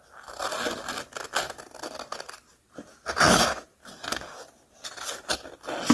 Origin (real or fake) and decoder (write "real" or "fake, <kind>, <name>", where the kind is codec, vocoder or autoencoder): real